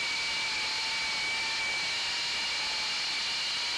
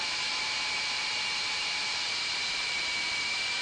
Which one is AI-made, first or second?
second